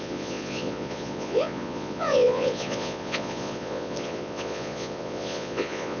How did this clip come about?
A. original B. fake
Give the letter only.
B